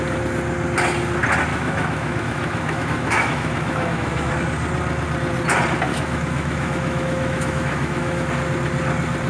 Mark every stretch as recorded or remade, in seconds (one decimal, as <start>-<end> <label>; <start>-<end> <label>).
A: 0.0-1.5 recorded; 1.5-4.3 remade; 4.3-5.9 recorded; 5.9-8.3 remade; 8.3-9.3 recorded